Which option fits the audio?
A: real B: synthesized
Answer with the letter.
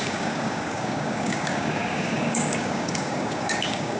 B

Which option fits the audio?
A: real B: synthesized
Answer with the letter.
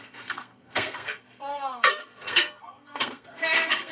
B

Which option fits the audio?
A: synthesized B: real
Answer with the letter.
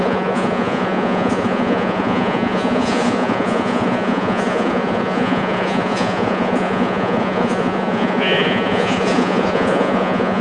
A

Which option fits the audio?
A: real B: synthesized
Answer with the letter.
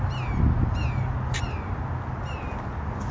A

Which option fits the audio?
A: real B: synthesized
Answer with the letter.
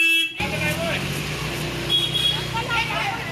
A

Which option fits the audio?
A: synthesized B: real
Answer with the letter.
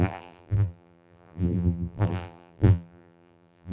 A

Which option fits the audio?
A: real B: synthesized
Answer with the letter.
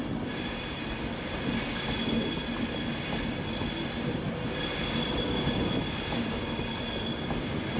A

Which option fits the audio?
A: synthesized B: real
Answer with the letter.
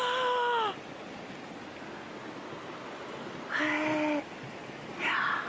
B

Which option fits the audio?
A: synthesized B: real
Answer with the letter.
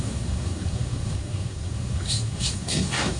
A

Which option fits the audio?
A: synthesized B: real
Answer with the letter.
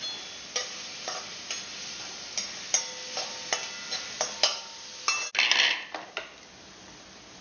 B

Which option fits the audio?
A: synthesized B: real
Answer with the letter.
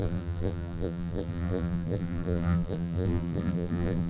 A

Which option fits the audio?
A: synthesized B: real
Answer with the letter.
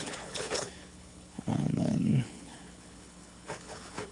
A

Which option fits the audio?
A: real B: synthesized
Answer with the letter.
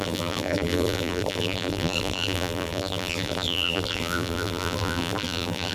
B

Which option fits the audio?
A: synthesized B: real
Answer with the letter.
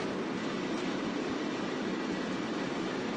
B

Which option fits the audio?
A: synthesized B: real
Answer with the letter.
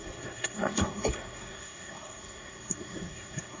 A